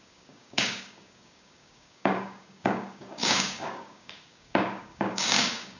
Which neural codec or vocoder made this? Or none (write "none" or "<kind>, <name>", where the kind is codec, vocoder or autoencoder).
codec, DAC